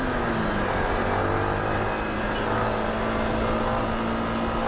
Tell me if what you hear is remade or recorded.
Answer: recorded